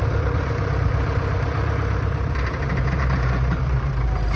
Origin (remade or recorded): remade